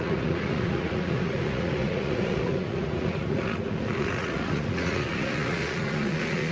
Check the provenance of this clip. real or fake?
fake